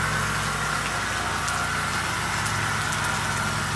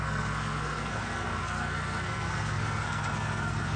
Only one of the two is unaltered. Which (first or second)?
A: first